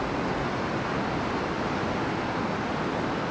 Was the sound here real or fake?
real